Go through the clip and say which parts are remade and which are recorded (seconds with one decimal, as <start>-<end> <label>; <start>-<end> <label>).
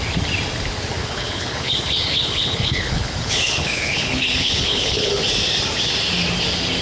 0.0-1.0 recorded; 1.0-5.1 remade; 5.1-6.8 recorded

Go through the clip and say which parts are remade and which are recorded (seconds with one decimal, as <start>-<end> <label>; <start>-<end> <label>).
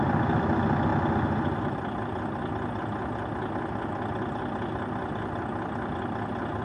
0.0-6.6 recorded